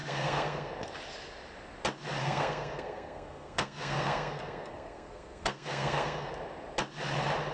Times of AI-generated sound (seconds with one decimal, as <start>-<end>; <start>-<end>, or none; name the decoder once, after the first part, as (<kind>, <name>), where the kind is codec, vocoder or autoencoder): 0.0-0.7 (codec, SNAC); 2.2-6.3